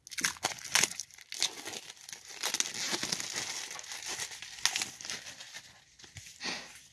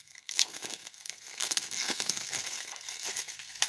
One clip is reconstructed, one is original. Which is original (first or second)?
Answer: first